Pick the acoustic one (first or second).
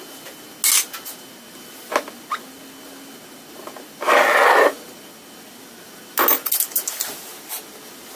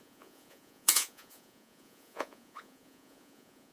first